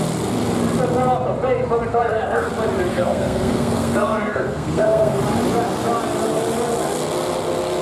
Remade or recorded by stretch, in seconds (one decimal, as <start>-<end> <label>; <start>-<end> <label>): 0.0-1.9 recorded; 1.9-2.5 remade; 2.5-2.9 recorded; 2.9-5.2 remade; 5.2-7.8 recorded